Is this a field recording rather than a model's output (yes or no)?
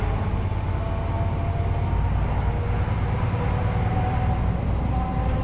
yes